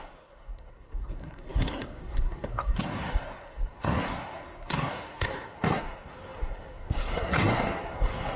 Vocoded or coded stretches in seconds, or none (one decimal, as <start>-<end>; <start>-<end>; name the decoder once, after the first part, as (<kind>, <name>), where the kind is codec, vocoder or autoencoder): 0.0-8.4 (codec, SNAC)